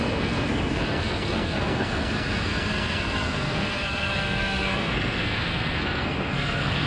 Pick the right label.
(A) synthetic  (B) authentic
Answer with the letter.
A